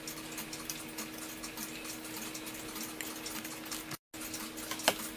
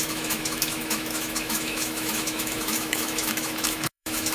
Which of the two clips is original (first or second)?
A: first